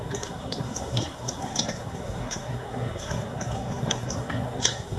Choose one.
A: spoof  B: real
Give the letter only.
A